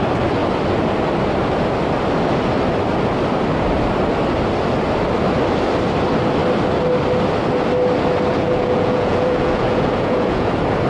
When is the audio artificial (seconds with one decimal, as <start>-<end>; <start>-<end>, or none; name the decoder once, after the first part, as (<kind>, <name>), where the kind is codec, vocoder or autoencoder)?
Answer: 8.3-10.5 (vocoder, Vocos)